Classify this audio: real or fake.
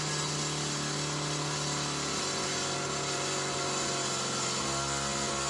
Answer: real